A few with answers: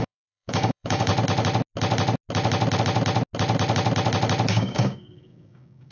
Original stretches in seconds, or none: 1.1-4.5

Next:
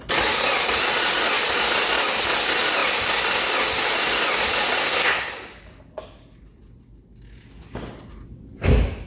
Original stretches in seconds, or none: 0.0-4.8; 5.3-9.1